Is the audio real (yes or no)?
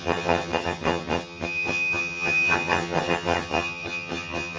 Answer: no